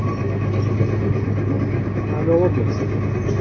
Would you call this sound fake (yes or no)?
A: no